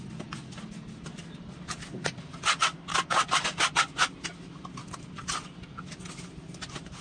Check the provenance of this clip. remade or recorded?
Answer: recorded